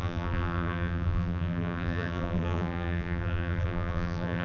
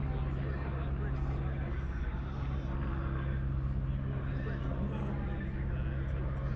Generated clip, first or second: first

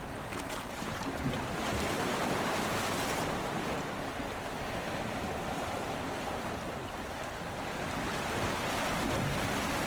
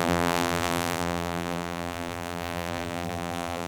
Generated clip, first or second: second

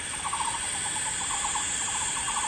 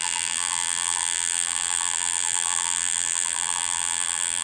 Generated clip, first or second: second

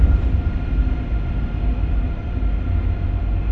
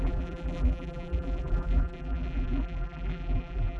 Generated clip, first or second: second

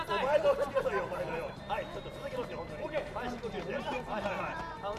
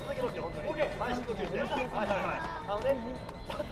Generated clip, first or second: first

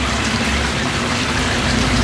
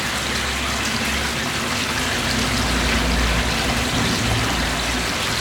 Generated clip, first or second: first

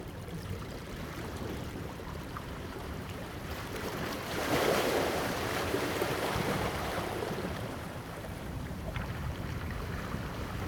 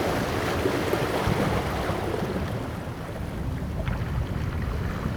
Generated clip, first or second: first